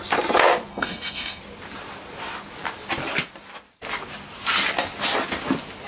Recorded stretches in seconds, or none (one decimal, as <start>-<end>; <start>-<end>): 0.0-0.7; 1.4-5.9

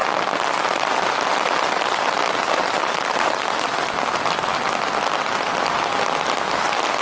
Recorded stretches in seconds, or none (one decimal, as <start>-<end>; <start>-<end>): 4.0-7.0